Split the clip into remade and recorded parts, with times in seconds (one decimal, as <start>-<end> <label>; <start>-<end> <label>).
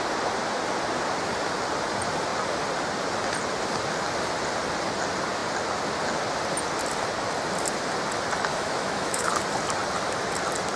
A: 0.0-8.5 recorded; 8.5-9.3 remade; 9.3-10.8 recorded